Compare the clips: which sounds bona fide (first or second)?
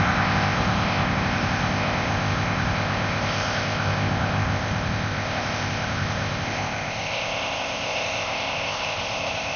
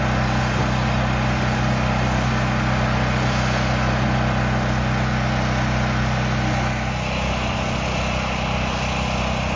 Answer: second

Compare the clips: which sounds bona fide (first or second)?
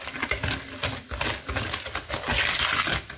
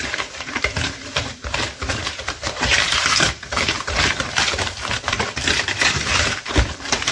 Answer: first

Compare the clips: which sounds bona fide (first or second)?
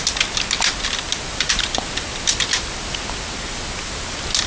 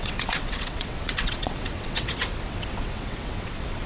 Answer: first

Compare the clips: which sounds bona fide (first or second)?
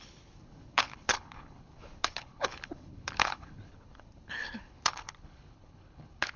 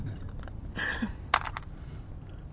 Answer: second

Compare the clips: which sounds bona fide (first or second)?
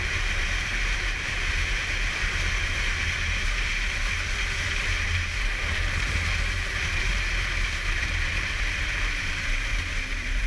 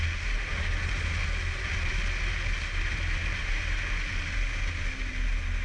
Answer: second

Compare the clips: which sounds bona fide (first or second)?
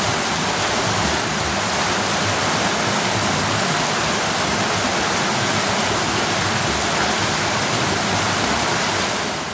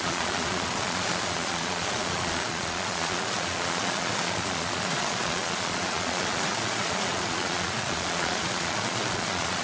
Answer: first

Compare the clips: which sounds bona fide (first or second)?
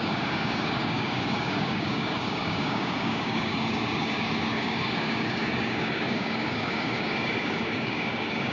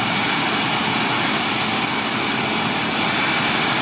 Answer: second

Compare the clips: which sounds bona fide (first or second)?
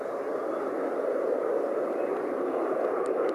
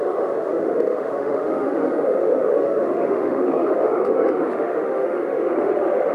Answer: first